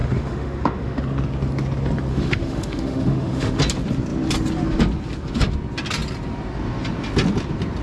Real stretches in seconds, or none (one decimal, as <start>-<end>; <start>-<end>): 1.0-2.1; 3.6-7.8